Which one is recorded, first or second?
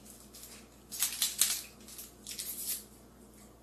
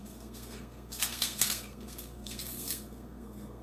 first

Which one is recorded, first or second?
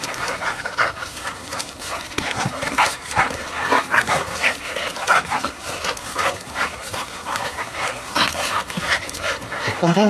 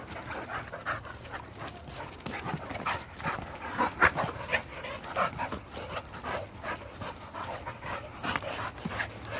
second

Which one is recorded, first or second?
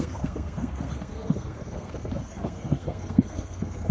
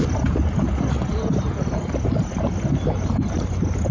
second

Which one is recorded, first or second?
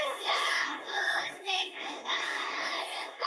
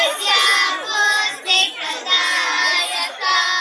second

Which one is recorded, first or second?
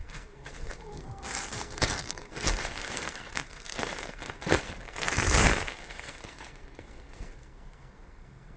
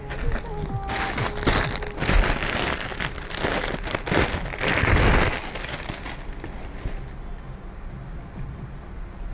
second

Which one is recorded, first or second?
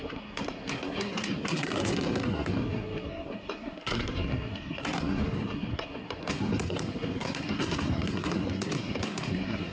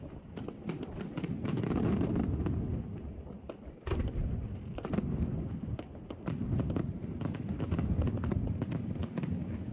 second